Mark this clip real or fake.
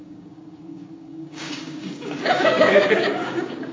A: fake